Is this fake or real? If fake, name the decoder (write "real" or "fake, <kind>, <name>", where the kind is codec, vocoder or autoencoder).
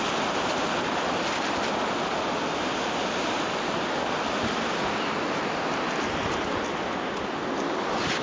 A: real